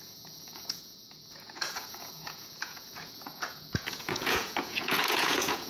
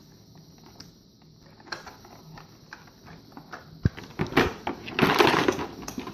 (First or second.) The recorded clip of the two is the second